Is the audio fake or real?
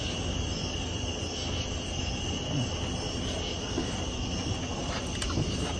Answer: real